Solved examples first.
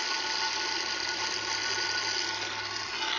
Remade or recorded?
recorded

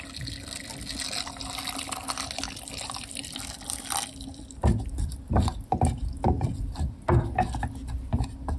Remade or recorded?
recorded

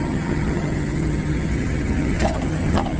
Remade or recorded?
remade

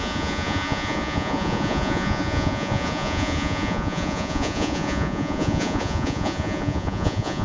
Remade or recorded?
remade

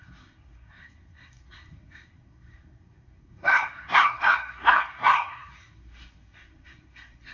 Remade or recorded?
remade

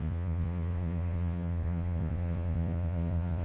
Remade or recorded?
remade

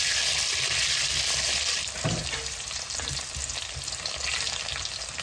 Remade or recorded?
recorded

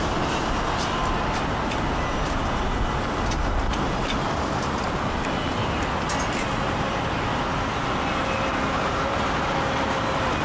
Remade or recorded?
recorded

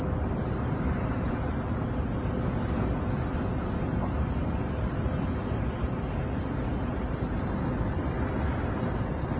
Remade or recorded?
recorded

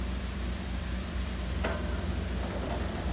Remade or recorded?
remade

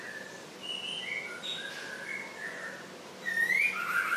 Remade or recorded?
recorded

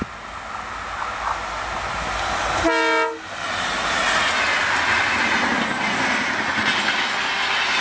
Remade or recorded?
recorded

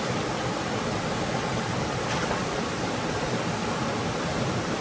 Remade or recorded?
recorded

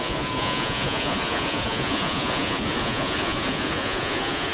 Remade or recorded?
remade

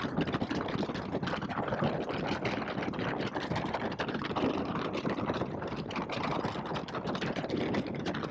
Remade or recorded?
recorded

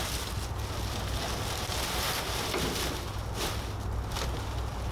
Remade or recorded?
recorded